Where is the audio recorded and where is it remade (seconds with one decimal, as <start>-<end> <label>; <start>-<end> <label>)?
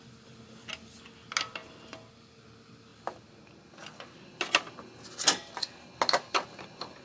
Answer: 0.0-7.0 recorded